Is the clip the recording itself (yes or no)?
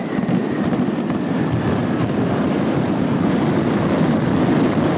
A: no